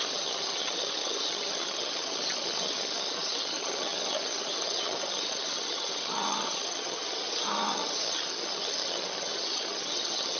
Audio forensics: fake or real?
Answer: fake